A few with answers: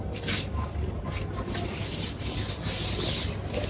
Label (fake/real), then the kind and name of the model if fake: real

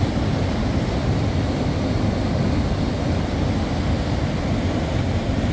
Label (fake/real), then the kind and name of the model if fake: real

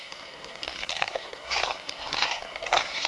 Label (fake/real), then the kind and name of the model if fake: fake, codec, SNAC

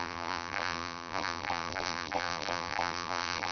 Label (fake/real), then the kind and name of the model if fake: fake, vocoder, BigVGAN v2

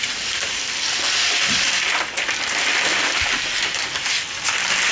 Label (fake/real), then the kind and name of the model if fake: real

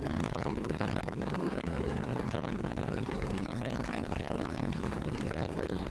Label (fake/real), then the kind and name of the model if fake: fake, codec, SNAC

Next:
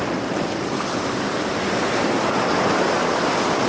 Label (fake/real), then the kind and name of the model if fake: real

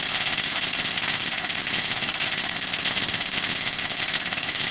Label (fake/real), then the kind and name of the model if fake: fake, codec, ZipCodec